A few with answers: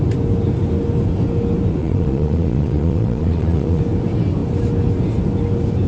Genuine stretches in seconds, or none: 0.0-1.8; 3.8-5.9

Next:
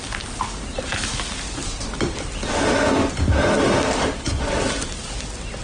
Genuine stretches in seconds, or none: 0.0-5.6

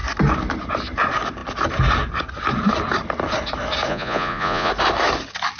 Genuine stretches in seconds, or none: 0.0-3.9; 4.7-5.6